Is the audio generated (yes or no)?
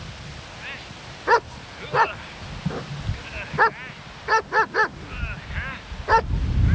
no